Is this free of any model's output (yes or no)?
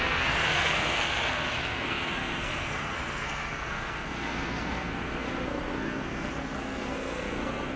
no